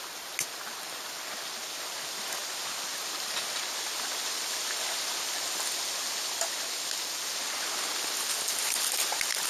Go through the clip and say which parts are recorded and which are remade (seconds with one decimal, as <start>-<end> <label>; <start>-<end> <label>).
0.0-9.5 recorded